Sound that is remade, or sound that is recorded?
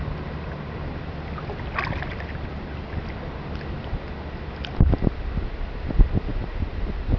recorded